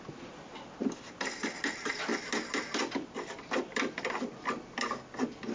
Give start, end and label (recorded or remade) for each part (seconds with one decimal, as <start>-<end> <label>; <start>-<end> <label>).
0.0-5.5 recorded